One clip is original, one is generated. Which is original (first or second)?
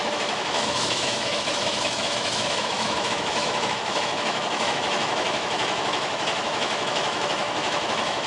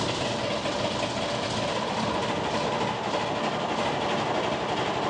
second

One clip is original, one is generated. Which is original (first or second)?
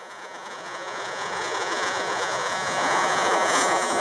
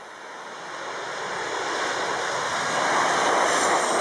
second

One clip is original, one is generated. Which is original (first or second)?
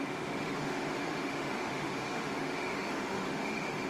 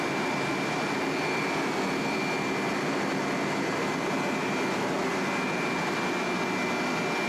second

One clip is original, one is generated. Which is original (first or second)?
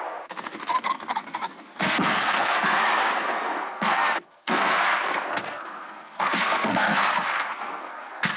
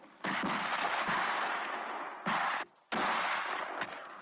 second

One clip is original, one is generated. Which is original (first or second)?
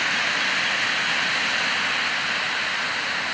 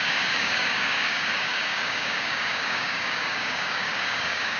first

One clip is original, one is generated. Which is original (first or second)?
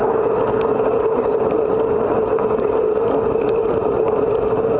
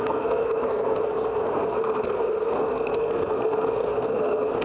first